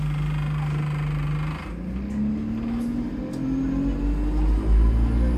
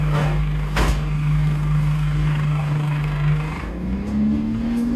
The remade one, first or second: second